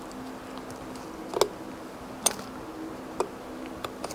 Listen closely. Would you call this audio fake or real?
real